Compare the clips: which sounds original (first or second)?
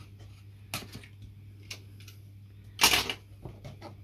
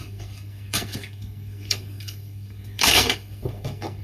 first